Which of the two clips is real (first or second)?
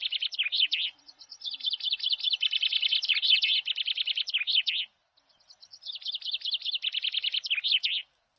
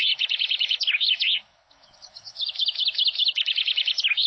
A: first